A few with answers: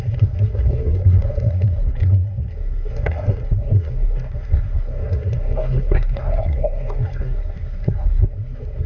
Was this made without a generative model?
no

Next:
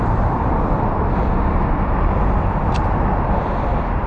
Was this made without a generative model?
yes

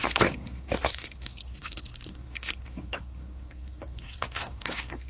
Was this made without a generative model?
no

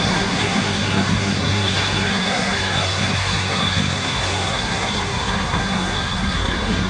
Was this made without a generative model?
no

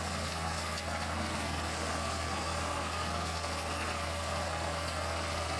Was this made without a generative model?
no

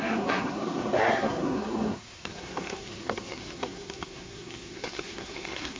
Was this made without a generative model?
no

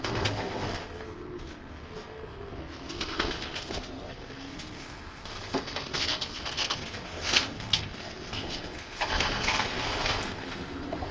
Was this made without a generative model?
no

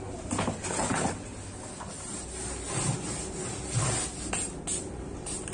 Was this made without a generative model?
yes